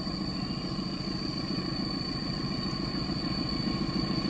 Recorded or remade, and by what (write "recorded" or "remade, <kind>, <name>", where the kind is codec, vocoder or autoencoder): recorded